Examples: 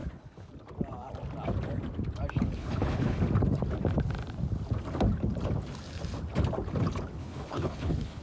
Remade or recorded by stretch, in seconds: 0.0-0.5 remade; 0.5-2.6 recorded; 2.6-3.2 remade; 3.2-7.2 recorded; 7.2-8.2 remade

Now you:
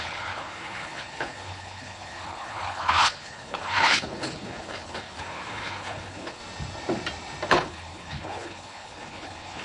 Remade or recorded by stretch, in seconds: 0.0-6.4 remade; 6.4-7.5 recorded; 7.5-9.6 remade

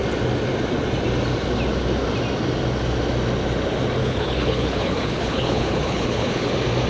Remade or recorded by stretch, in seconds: 0.0-4.0 recorded; 4.0-6.5 remade; 6.5-6.9 recorded

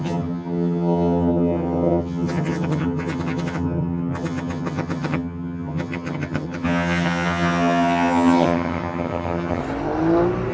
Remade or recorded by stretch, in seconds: 0.0-9.6 remade; 9.6-10.5 recorded

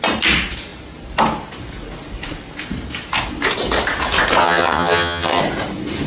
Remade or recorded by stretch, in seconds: 0.0-4.4 recorded; 4.4-5.4 remade; 5.4-6.1 recorded

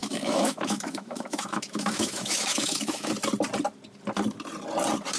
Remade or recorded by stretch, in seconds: 0.0-3.1 remade; 3.1-5.2 recorded